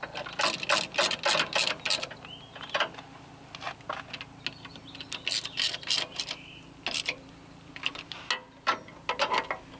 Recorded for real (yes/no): yes